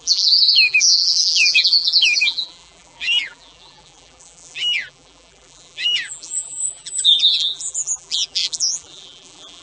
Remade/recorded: remade